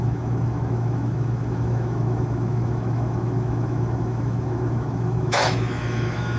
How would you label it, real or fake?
fake